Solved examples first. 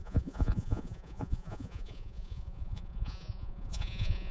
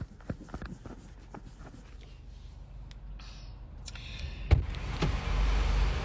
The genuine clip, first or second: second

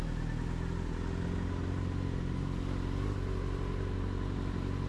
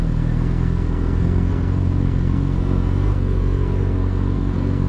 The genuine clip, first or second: first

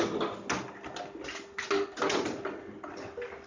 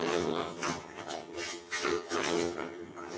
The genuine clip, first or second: first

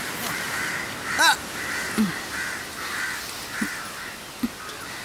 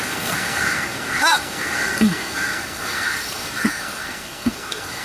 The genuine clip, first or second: first